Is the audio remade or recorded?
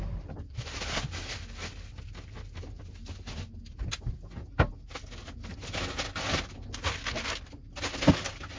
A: recorded